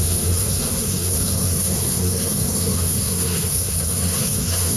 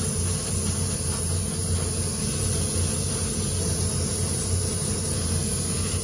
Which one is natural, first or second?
second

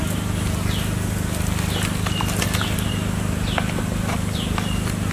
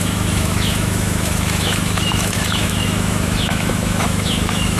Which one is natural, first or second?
first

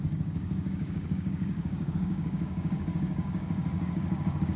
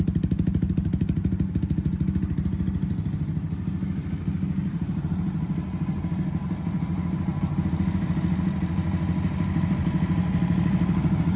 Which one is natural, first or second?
second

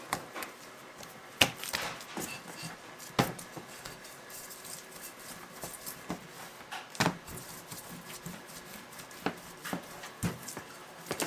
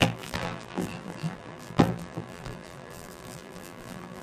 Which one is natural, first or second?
first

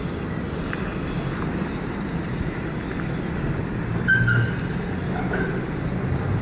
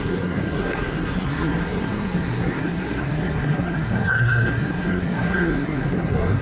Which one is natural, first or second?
first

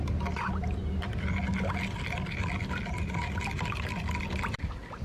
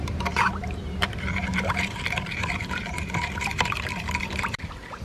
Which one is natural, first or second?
first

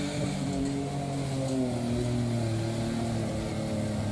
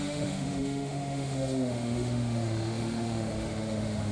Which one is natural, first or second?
first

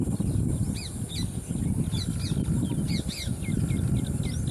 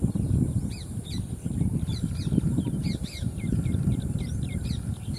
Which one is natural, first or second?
first